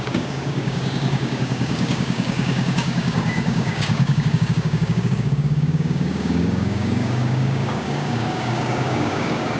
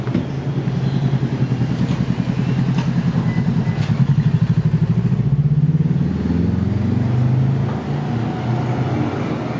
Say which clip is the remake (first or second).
first